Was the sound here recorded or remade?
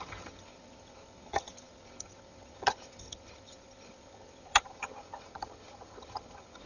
remade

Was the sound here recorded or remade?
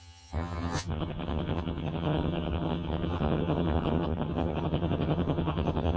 remade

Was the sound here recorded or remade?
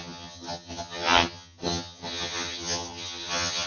remade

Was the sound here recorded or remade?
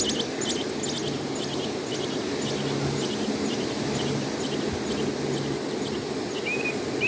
recorded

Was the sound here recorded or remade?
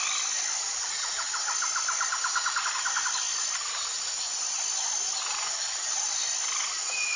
recorded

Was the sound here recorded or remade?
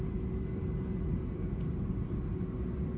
recorded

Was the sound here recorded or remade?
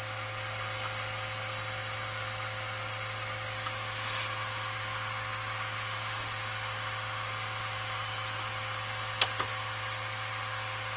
recorded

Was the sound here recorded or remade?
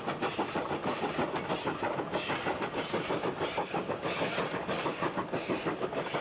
recorded